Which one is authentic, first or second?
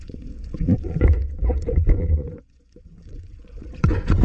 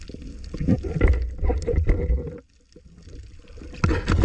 second